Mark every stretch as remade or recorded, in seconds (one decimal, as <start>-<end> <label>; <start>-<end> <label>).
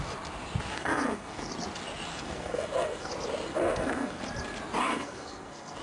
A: 0.0-0.7 recorded; 0.7-1.5 remade; 1.5-2.1 recorded; 2.1-3.1 remade; 3.1-3.5 recorded; 3.5-4.2 remade; 4.2-4.9 recorded; 4.9-5.8 remade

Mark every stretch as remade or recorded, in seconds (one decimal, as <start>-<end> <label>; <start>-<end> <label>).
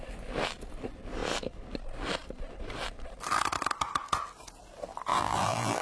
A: 0.0-5.1 recorded; 5.1-5.8 remade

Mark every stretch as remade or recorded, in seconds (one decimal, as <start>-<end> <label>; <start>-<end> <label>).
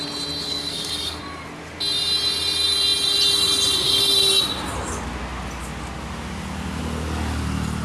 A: 0.0-0.4 recorded; 0.4-1.2 remade; 1.2-7.8 recorded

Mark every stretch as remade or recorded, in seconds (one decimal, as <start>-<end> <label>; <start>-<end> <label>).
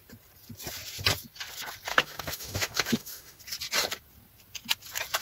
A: 0.0-1.9 recorded; 1.9-3.4 remade; 3.4-5.2 recorded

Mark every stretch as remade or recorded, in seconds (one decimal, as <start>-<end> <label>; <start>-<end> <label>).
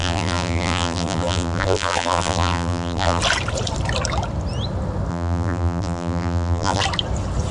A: 0.0-3.2 remade; 3.2-5.1 recorded; 5.1-6.8 remade; 6.8-7.5 recorded